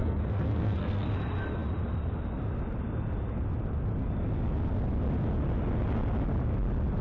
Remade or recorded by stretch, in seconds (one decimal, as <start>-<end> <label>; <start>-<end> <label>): 0.0-1.1 remade; 1.1-7.0 recorded